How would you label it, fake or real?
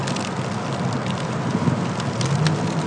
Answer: real